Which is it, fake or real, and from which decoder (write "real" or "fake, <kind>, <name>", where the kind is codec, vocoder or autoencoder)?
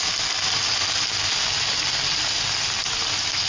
real